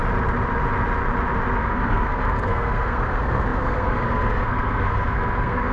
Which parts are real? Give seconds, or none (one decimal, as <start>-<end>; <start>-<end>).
0.0-1.6